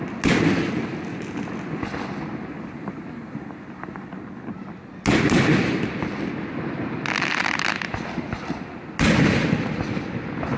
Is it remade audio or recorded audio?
recorded